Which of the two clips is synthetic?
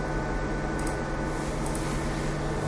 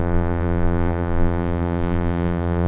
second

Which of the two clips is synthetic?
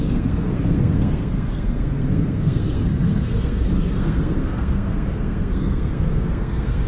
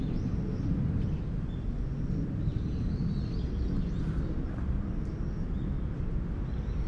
first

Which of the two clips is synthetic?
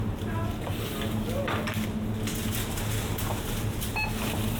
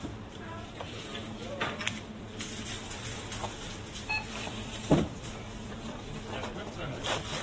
second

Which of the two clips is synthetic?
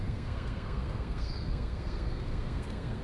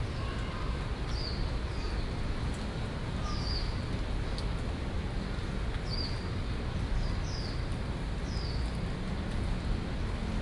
first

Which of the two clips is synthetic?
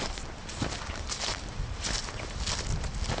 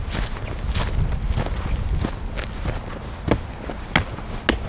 first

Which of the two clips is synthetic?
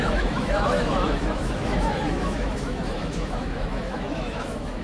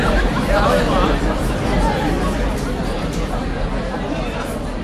first